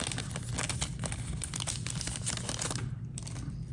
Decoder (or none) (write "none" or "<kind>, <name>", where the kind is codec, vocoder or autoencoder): none